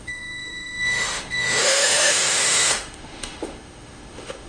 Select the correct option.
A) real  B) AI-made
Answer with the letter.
B